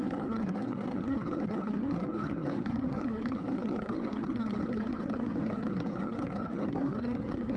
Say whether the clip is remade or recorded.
remade